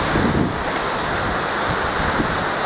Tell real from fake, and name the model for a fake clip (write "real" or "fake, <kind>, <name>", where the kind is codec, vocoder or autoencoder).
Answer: real